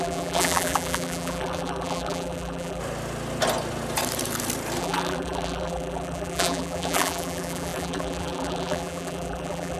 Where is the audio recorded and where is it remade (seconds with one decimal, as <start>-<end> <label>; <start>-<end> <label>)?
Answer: 0.0-2.8 remade; 2.8-4.8 recorded; 4.8-9.8 remade